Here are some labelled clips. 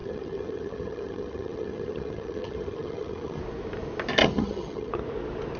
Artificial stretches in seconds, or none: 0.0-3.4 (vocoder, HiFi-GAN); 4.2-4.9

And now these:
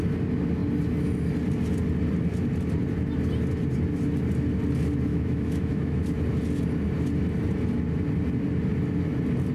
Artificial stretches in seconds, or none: 5.1-6.0 (autoencoder, DAC-VAE)

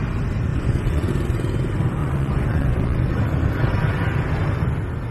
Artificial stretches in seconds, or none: 0.5-1.1 (vocoder, Vocos); 2.0-3.2

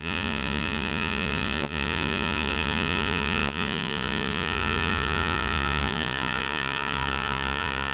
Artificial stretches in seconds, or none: 0.0-7.9 (vocoder, Vocos)

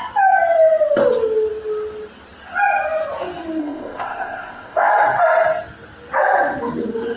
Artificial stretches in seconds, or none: 3.6-4.9 (codec, ZipCodec)

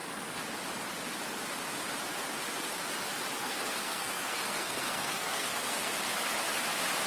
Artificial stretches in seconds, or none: 3.4-5.9 (codec, SNAC)

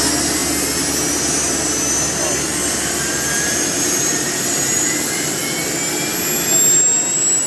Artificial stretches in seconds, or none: 2.6-5.4 (vocoder, BigVGAN v2)

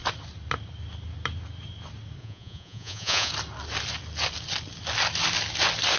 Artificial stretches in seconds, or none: 2.2-3.3 (vocoder, Vocos)